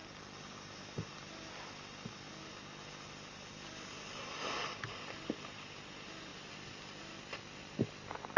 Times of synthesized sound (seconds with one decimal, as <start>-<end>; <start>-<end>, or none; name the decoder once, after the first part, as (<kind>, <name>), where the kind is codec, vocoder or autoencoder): none